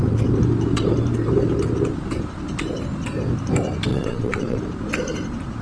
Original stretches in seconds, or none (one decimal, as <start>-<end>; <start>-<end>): 0.0-3.9; 4.6-5.6